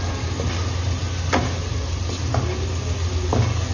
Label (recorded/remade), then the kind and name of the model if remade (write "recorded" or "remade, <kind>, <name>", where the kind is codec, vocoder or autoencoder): recorded